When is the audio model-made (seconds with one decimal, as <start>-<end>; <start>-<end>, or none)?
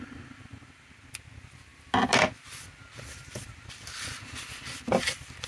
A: none